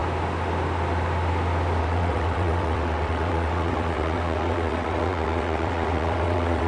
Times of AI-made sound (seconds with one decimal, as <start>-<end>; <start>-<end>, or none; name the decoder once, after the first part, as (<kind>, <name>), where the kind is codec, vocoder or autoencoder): 1.8-6.7 (vocoder, WaveNeXt)